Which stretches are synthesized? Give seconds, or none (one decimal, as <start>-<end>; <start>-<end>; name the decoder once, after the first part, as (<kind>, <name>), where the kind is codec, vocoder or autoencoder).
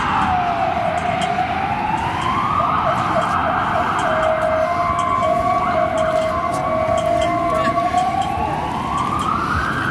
none